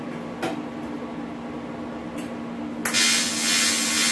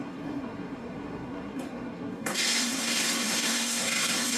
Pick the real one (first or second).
first